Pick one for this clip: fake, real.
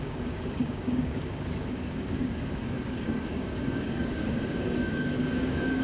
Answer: fake